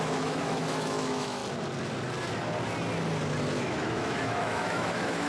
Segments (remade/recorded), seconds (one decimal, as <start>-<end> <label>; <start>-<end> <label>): 0.0-1.4 remade; 1.4-3.6 recorded; 3.6-5.3 remade